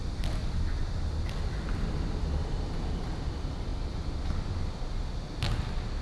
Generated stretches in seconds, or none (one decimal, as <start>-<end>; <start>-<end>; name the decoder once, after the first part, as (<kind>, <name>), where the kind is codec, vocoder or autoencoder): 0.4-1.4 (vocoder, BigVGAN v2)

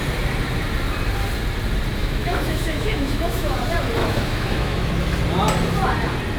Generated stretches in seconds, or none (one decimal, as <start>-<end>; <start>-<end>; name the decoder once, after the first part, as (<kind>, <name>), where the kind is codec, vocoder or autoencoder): 2.0-3.6 (autoencoder, DAC-VAE); 4.0-4.9

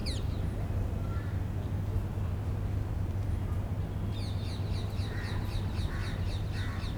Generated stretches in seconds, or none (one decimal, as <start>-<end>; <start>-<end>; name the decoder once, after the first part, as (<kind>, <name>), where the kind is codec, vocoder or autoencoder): none